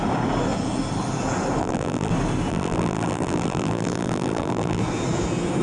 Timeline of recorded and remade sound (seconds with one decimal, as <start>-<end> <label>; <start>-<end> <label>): 0.0-1.6 recorded; 1.6-2.1 remade; 2.1-2.5 recorded; 2.5-4.8 remade; 4.8-5.6 recorded